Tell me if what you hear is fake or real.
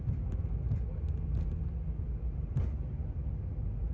real